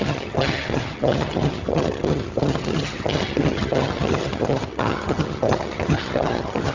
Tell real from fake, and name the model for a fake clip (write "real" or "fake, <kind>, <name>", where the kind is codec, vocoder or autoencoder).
fake, vocoder, HiFi-GAN